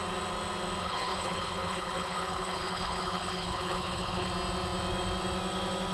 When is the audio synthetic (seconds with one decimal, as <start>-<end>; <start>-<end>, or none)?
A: 0.8-4.3